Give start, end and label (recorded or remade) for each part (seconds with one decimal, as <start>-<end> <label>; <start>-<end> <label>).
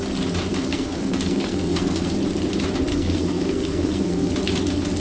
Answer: 0.0-0.5 recorded; 0.5-2.1 remade; 2.1-2.9 recorded; 2.9-4.3 remade; 4.3-5.0 recorded